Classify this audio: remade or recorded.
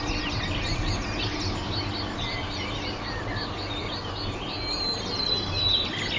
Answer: recorded